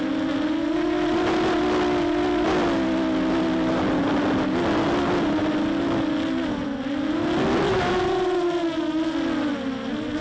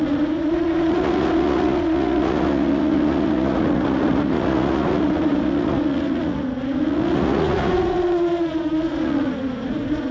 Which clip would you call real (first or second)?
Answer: first